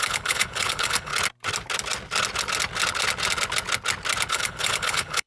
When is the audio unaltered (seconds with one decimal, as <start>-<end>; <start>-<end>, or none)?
1.1-4.3